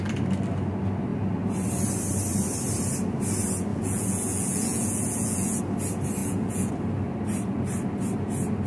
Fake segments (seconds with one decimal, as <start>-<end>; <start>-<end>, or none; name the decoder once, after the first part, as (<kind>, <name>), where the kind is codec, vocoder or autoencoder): 3.7-5.6 (vocoder, Vocos); 6.2-6.7